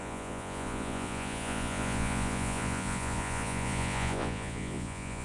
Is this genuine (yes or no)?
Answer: no